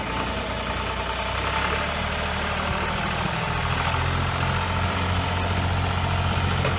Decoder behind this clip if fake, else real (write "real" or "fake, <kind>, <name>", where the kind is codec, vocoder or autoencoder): real